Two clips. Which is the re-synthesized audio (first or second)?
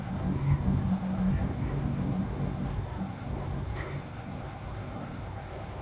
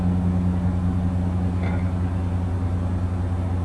first